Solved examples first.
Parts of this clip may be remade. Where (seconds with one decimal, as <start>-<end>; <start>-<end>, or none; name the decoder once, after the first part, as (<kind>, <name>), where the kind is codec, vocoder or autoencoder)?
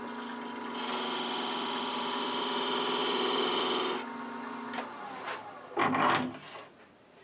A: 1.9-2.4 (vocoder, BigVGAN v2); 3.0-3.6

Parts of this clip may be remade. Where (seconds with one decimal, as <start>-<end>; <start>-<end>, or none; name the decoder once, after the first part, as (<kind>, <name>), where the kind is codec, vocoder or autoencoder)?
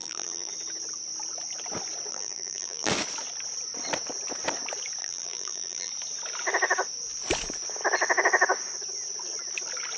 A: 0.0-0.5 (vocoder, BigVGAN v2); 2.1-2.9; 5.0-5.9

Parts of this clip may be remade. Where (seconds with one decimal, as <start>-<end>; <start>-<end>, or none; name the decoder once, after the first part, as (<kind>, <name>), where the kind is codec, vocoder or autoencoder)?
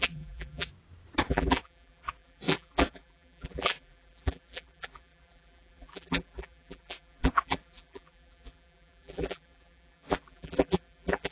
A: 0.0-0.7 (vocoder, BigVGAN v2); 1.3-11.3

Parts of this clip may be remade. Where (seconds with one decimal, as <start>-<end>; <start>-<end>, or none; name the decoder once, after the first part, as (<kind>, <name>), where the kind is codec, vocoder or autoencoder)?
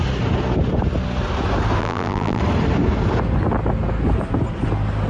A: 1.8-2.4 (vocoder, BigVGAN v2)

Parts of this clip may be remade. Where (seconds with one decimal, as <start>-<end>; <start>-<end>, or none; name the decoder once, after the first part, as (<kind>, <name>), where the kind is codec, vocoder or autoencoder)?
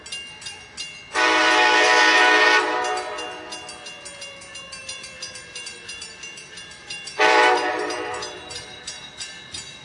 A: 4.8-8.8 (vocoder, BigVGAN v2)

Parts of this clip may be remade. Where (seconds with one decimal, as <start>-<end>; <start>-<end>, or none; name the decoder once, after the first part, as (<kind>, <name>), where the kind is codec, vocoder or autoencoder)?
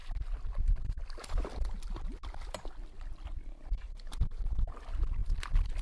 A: 0.0-3.5 (vocoder, BigVGAN v2)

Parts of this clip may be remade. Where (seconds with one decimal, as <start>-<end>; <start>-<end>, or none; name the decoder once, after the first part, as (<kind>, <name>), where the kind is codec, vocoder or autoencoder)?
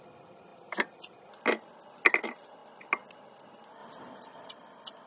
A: none